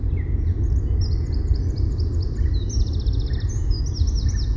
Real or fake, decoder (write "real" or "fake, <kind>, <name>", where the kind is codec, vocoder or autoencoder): real